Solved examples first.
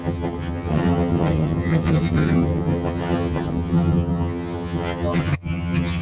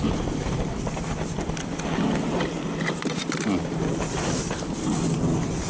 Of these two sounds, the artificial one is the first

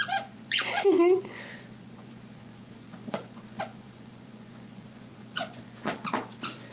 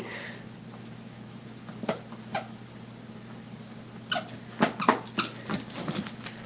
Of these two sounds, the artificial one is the first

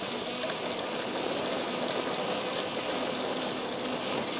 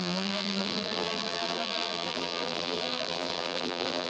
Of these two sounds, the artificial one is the second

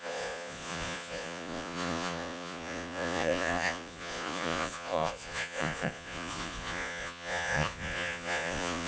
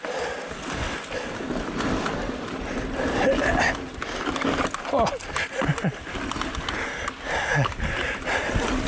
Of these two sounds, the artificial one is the first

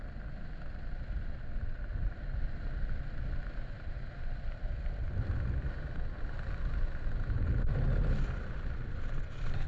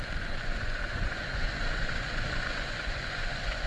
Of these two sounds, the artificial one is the second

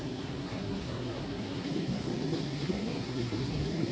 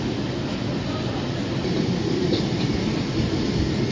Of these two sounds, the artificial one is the first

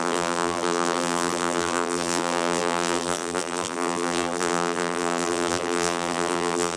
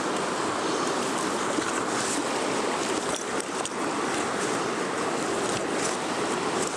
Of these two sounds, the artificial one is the first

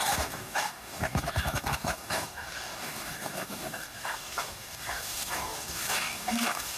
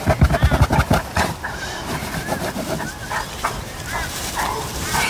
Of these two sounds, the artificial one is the first